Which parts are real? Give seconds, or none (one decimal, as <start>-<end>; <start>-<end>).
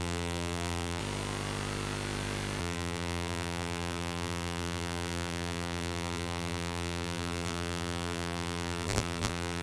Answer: 1.0-2.6